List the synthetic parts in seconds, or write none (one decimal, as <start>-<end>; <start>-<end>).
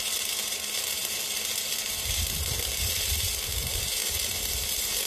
none